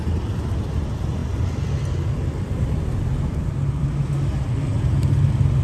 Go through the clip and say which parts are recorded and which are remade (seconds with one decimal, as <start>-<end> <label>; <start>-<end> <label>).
0.0-5.6 recorded